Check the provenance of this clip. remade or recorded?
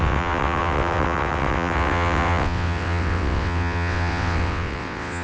remade